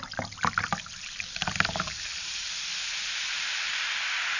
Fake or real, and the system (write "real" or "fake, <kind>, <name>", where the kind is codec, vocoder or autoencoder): real